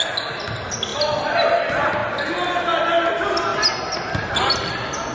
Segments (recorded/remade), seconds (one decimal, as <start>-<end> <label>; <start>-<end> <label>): 0.0-5.1 recorded